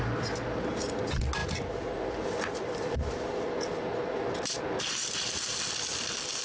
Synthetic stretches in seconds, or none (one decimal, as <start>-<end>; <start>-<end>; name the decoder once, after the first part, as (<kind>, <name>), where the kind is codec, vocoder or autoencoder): none